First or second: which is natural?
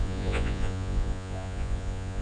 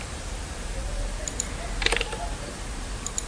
second